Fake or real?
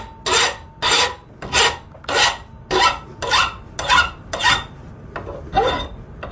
real